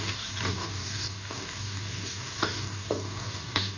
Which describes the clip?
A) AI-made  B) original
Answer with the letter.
A